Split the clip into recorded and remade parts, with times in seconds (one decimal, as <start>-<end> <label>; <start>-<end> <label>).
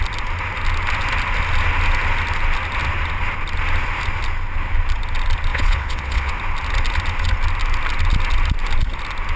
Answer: 0.0-5.5 recorded; 5.5-6.3 remade; 6.3-9.4 recorded